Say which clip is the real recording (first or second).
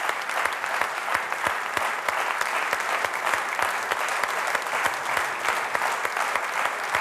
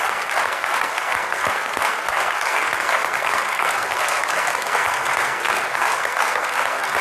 first